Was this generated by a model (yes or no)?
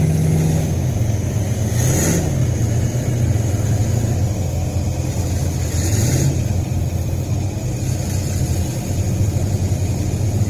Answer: no